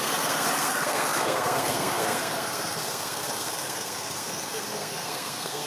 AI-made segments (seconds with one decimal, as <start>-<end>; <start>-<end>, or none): 0.0-5.7